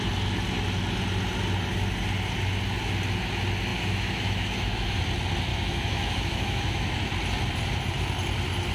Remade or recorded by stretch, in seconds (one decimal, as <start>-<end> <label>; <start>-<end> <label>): 0.0-3.7 recorded; 3.7-5.0 remade; 5.0-5.5 recorded; 5.5-7.0 remade; 7.0-8.7 recorded